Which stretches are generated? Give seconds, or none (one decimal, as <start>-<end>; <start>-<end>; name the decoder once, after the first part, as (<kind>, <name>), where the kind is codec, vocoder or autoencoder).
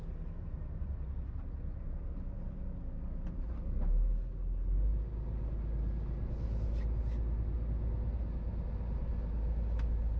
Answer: none